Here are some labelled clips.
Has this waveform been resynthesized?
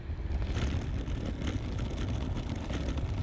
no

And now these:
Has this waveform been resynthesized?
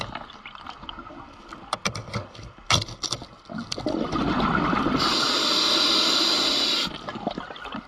no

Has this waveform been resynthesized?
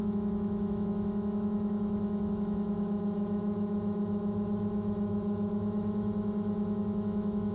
yes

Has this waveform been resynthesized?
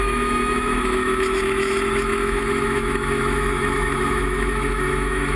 yes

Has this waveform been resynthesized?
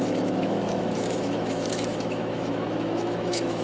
yes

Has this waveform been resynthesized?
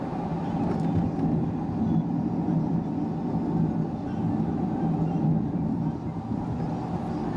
no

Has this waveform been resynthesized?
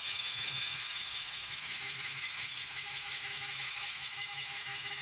yes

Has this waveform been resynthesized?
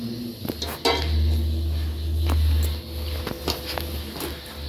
no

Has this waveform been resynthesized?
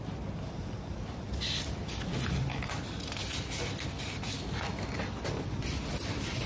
no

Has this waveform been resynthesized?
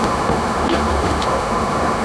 yes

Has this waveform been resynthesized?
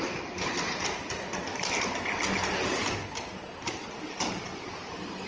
no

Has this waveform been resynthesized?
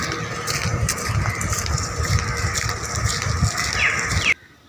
no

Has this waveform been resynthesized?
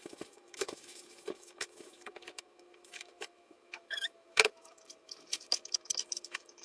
yes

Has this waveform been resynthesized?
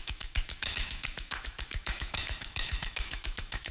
yes